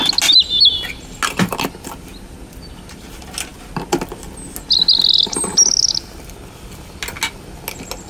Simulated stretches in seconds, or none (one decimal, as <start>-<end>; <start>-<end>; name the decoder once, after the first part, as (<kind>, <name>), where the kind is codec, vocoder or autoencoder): none